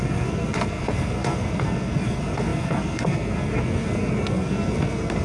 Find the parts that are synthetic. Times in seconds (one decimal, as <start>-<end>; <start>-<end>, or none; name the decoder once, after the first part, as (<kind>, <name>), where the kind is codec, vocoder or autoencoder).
0.0-5.2 (codec, SNAC)